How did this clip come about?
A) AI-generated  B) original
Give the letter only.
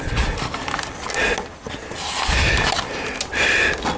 B